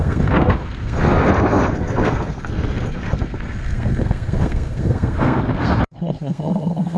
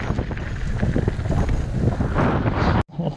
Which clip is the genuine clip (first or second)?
second